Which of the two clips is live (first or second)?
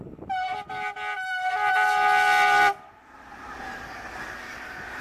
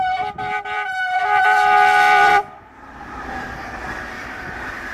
first